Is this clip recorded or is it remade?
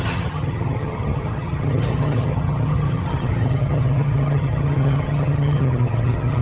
remade